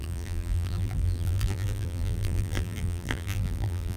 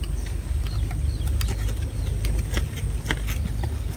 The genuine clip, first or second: second